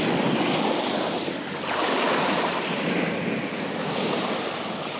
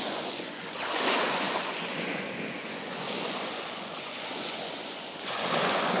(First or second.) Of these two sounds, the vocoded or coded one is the second